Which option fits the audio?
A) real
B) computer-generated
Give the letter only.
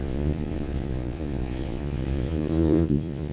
B